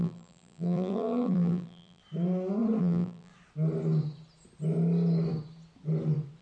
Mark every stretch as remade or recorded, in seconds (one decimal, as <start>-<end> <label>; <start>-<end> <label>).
0.0-2.0 remade; 2.0-2.8 recorded; 2.8-3.3 remade; 3.3-6.4 recorded